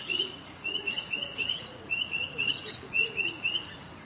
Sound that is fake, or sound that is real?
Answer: fake